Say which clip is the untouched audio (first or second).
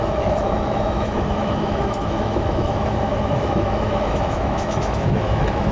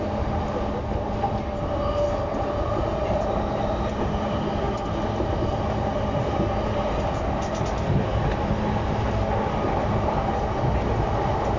second